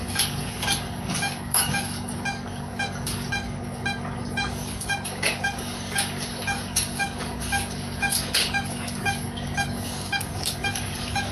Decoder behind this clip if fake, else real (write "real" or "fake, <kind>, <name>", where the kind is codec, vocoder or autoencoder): fake, codec, DAC